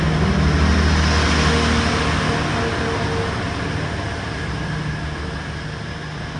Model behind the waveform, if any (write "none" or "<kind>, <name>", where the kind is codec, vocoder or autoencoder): none